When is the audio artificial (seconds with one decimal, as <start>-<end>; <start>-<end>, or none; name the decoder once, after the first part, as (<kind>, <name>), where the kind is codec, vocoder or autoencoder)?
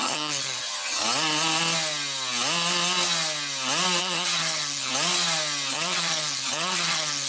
0.0-1.0 (vocoder, HiFi-GAN); 4.0-4.9; 5.7-7.3